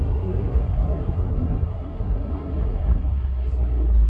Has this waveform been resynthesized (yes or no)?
yes